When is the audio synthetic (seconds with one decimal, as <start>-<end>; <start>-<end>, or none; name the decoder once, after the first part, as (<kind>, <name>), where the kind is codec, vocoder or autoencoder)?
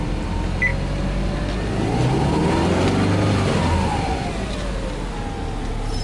none